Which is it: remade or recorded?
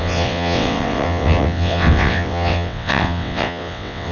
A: remade